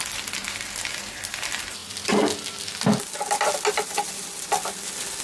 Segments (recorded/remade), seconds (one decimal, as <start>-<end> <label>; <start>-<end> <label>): 0.0-5.2 recorded